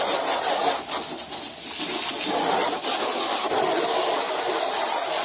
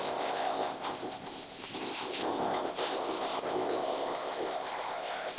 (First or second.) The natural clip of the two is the first